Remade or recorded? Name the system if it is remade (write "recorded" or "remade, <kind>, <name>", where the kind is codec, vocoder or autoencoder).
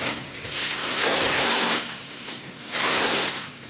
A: remade, codec, SNAC